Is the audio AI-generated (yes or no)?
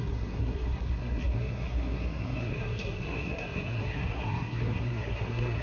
yes